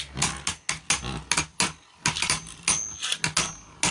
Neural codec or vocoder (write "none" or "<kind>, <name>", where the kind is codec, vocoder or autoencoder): none